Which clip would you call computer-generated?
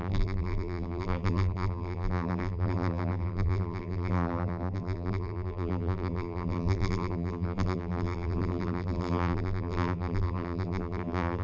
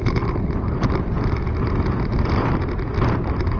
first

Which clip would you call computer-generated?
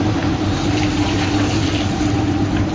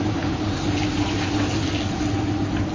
first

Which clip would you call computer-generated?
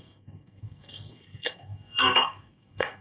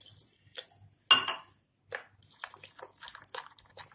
first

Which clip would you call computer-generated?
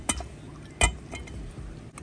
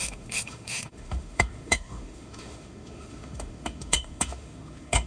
second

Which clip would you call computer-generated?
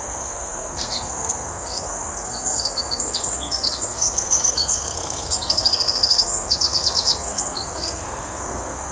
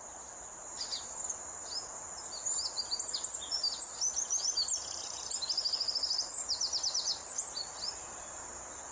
first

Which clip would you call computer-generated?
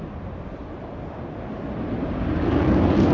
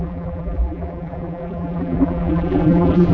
second